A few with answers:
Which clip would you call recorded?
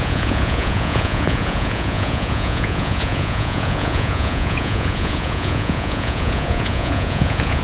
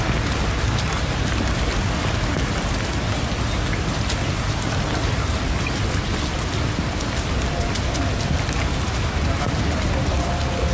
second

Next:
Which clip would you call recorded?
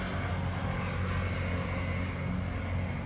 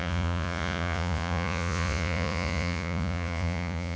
first